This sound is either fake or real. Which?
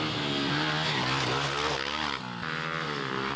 real